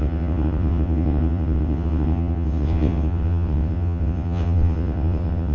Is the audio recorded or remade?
remade